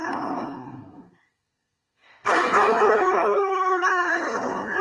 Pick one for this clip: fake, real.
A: fake